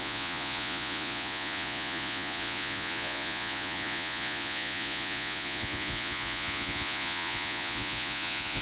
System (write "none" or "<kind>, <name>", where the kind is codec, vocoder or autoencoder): vocoder, Vocos